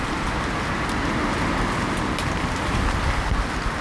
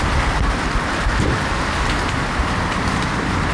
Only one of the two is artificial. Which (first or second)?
second